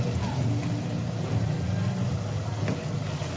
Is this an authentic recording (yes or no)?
yes